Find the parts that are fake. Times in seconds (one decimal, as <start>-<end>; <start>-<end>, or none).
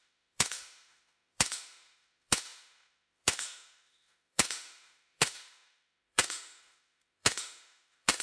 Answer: 0.0-8.2